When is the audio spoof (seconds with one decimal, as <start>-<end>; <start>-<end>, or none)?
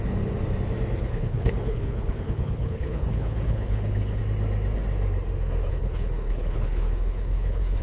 1.0-4.2; 5.7-7.8